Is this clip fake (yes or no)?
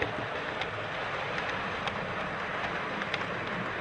no